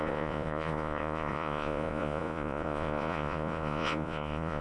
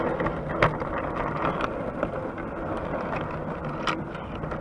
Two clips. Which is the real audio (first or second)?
second